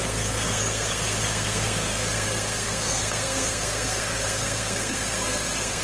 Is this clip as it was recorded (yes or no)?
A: no